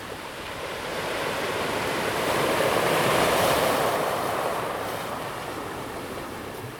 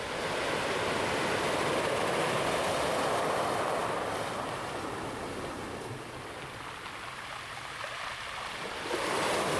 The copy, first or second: first